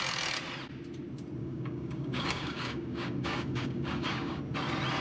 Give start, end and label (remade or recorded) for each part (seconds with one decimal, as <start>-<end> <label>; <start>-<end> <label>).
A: 0.0-1.4 recorded; 1.4-4.4 remade; 4.4-5.0 recorded